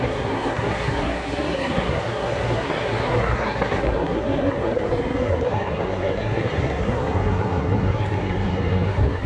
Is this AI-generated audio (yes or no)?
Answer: yes